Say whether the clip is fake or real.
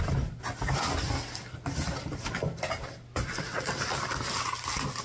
real